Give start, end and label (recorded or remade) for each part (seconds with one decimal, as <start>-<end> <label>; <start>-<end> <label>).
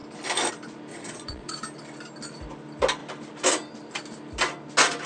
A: 0.0-0.9 recorded; 0.9-1.5 remade; 1.5-5.1 recorded